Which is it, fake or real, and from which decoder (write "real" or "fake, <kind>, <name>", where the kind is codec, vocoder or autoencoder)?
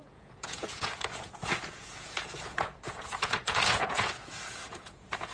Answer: fake, vocoder, Vocos